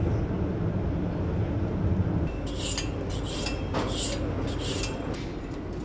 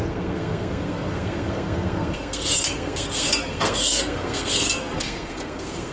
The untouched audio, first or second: first